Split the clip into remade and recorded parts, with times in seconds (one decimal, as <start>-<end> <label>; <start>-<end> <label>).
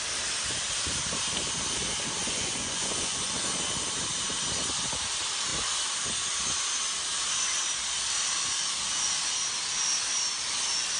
0.0-2.2 recorded; 2.2-3.4 remade; 3.4-11.0 recorded